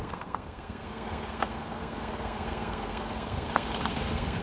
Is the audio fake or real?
fake